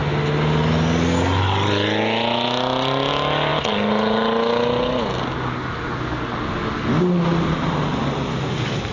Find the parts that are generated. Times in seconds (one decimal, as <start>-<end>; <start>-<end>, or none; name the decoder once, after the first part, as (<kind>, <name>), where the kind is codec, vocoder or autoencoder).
none